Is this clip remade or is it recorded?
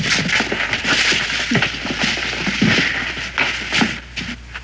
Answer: recorded